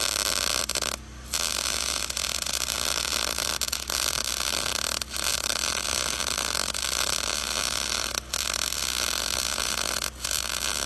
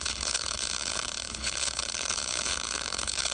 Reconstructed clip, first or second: second